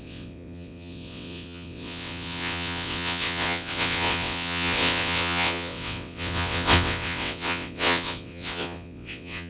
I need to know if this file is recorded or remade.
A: remade